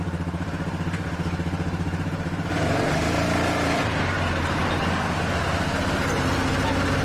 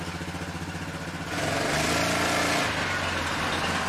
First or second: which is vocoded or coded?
first